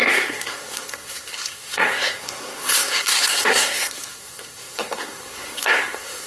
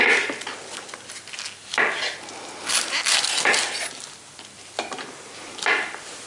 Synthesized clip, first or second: first